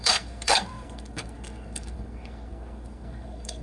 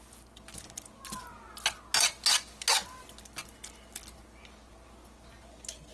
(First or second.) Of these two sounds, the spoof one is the first